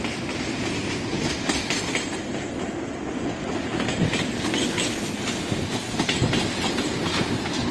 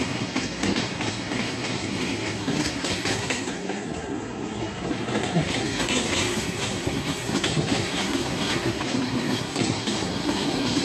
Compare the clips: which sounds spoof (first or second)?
second